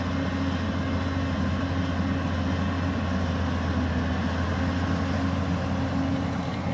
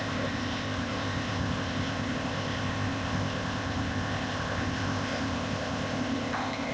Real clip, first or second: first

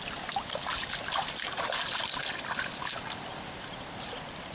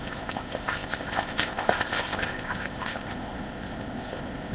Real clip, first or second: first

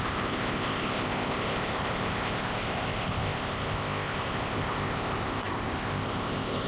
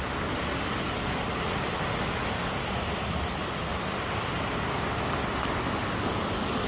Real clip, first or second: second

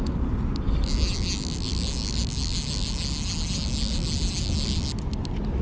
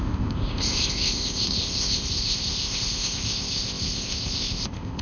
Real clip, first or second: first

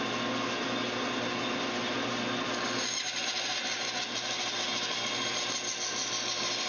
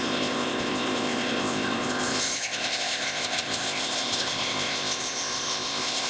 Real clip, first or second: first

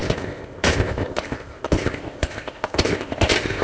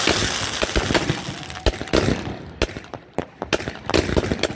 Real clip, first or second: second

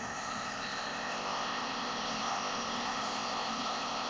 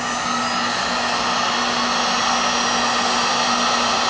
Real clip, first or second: second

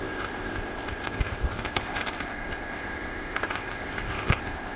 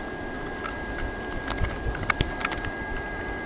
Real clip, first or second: second